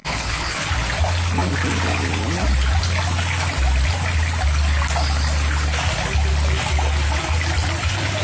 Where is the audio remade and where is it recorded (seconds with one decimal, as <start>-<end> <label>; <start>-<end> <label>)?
0.0-0.6 remade; 0.6-8.2 recorded

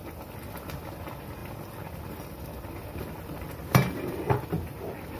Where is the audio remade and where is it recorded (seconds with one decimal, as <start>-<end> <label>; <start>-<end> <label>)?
0.0-5.2 recorded

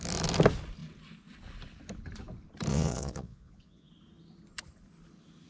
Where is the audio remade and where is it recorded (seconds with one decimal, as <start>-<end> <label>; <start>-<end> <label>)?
0.0-2.7 recorded; 2.7-3.9 remade; 3.9-5.5 recorded